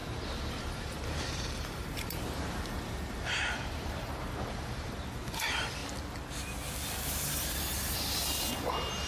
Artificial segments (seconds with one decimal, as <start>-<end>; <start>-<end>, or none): 0.0-5.8; 8.4-9.1